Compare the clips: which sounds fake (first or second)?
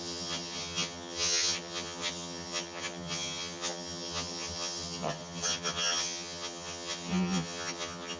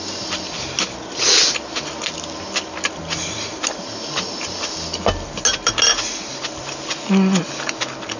first